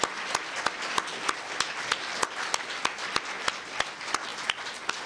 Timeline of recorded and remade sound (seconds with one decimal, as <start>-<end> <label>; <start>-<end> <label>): 0.0-5.1 recorded

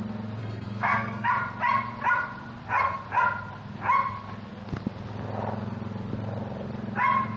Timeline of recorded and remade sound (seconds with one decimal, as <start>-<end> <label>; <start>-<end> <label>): 0.0-0.4 recorded; 0.4-1.3 remade; 1.3-7.4 recorded

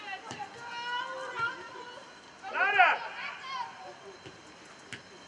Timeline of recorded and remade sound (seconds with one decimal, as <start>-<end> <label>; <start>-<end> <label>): 0.0-5.3 recorded

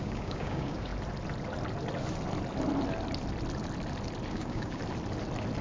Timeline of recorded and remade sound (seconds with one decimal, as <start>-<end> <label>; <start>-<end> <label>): 0.0-0.9 remade; 0.9-4.3 recorded; 4.3-4.8 remade; 4.8-5.6 recorded

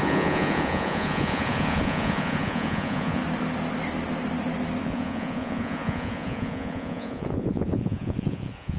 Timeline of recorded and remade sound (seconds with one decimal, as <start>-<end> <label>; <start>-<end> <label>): 0.0-3.2 remade; 3.2-4.8 recorded; 4.8-8.8 remade

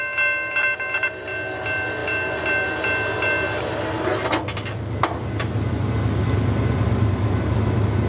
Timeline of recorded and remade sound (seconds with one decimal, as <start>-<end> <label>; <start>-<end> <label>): 0.0-8.1 recorded

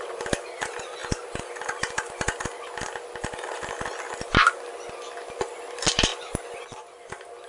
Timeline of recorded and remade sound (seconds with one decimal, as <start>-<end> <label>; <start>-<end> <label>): 0.0-7.5 recorded